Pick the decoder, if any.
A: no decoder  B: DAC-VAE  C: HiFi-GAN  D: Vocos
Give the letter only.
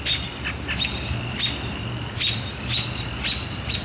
A